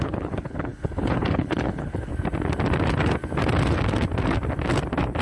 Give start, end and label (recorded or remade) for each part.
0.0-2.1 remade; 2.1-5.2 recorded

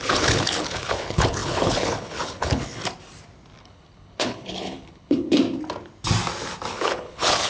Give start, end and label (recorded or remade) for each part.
0.0-2.8 remade; 2.8-3.6 recorded; 3.6-5.4 remade; 5.4-6.7 recorded; 6.7-7.5 remade

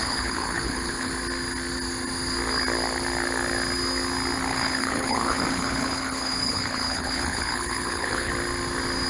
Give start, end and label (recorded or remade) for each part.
0.0-1.1 remade; 1.1-4.5 recorded; 4.5-8.3 remade; 8.3-9.1 recorded

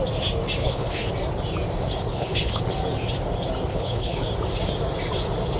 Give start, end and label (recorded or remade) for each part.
0.0-0.6 recorded; 0.6-1.1 remade; 1.1-2.1 recorded; 2.1-2.6 remade; 2.6-3.7 recorded; 3.7-4.2 remade; 4.2-5.6 recorded

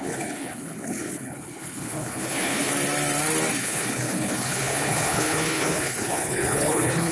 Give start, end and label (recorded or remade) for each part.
0.0-2.7 remade; 2.7-3.6 recorded; 3.6-7.1 remade

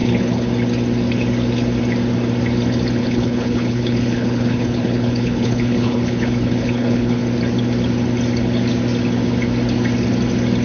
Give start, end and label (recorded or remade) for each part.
0.0-0.5 remade; 0.5-3.0 recorded; 3.0-7.2 remade; 7.2-10.6 recorded